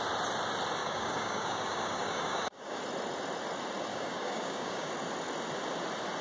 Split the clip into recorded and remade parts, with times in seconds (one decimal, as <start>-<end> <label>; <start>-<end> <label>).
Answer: 0.0-0.8 recorded; 0.8-2.8 remade; 2.8-3.9 recorded; 3.9-4.9 remade; 4.9-6.2 recorded